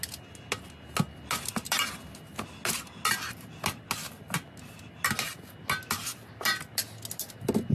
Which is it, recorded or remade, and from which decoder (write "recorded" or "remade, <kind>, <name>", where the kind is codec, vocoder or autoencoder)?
recorded